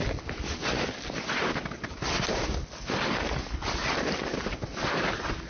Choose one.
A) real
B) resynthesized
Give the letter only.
A